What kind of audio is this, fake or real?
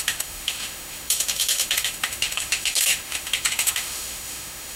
fake